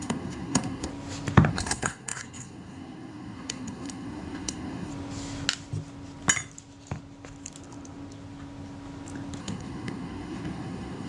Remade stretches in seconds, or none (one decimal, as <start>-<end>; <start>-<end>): 0.0-0.9; 1.5-4.9; 9.4-11.1